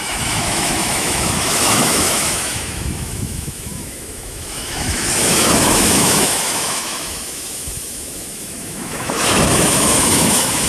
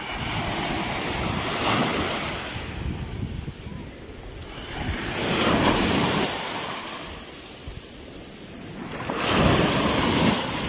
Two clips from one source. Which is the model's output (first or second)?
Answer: first